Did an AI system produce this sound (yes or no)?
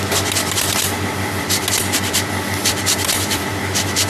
yes